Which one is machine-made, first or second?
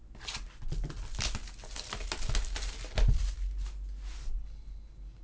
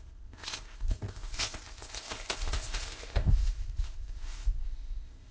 second